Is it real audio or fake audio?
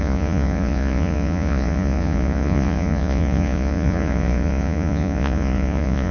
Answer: fake